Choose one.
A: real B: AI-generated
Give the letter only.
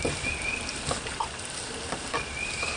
A